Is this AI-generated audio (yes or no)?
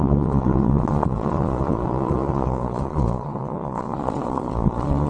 yes